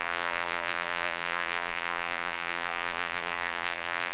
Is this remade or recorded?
remade